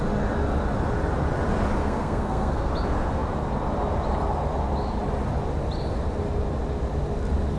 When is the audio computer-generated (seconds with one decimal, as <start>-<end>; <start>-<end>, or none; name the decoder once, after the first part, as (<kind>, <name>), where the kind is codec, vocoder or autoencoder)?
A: 1.8-2.7 (codec, SNAC)